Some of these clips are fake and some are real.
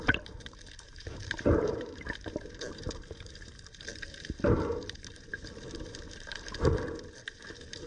fake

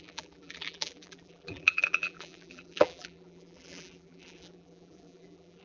fake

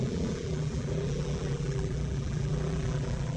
fake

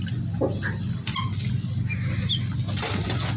real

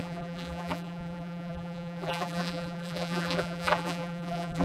fake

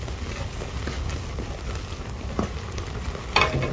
real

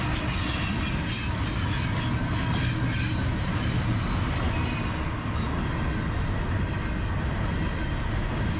real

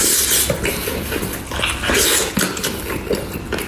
real